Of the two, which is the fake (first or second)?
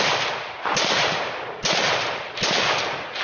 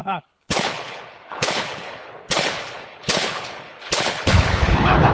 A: second